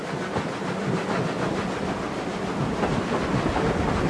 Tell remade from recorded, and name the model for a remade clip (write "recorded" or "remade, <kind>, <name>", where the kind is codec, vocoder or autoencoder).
recorded